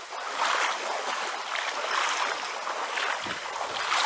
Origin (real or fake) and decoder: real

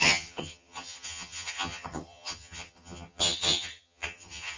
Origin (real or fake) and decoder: fake, vocoder, HiFi-GAN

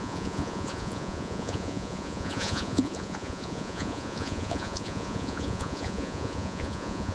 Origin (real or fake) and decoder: fake, vocoder, Vocos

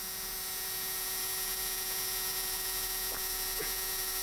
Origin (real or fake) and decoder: fake, vocoder, Vocos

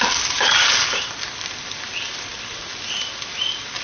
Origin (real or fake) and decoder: fake, vocoder, BigVGAN v2